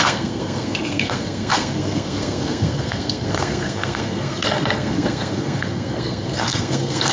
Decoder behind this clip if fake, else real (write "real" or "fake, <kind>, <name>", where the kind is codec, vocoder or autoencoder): fake, codec, SNAC